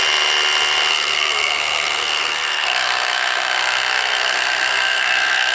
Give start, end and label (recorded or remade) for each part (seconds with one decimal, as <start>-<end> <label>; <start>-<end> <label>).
0.0-0.9 recorded; 0.9-5.5 remade